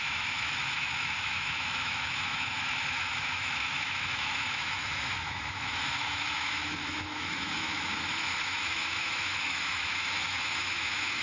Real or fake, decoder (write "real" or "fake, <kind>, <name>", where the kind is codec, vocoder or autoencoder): fake, autoencoder, DAC-VAE